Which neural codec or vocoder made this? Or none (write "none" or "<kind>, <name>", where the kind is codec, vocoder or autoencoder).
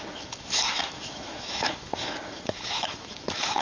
autoencoder, DAC-VAE